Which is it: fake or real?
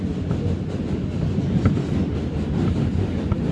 real